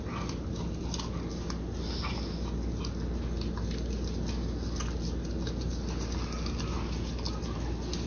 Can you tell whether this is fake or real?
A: real